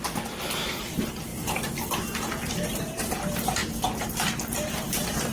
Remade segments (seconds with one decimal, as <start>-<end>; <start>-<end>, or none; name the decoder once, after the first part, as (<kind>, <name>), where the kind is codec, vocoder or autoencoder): 0.0-1.3 (vocoder, BigVGAN v2); 2.4-3.6; 4.5-5.3